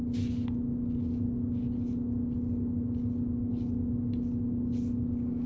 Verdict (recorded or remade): recorded